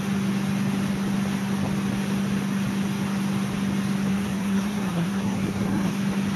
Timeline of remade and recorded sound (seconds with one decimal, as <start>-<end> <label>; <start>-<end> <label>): 0.0-4.1 recorded; 4.1-5.9 remade; 5.9-6.4 recorded